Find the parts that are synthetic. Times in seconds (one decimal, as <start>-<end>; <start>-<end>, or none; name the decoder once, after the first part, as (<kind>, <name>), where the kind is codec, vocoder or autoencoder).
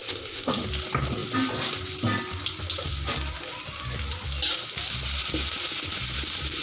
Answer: 0.0-0.5 (codec, ZipCodec)